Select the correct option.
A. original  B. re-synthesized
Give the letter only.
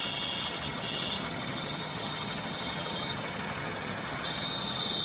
B